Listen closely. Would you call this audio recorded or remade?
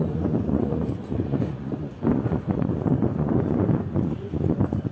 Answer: remade